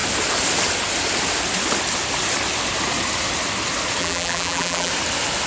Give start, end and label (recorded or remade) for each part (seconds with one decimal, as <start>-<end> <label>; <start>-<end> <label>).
0.0-4.0 recorded; 4.0-4.9 remade; 4.9-5.5 recorded